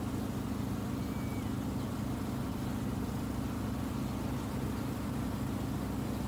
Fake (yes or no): no